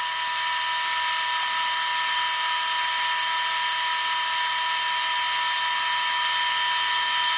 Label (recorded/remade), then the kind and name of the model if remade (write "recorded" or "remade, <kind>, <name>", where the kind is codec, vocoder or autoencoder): recorded